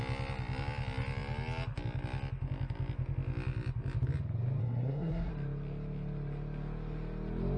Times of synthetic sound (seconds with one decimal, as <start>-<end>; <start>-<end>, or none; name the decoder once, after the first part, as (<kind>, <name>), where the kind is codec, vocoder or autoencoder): 4.6-5.3 (codec, SNAC)